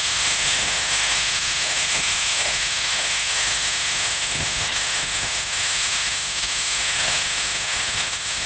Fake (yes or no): yes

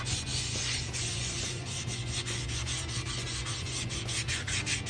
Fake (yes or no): yes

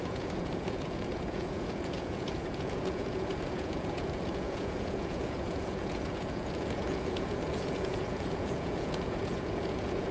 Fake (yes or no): yes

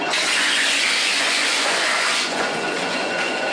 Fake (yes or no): yes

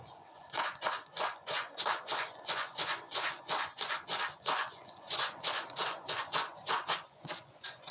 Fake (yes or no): yes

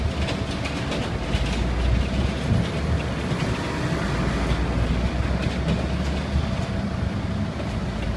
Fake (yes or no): no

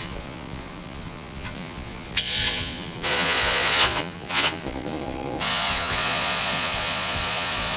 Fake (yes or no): yes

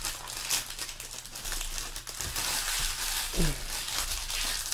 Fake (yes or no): no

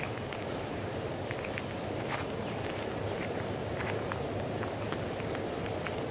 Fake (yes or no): no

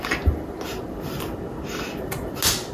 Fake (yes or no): no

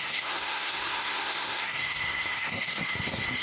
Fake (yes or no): yes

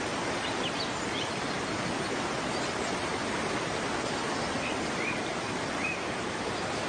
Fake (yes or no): no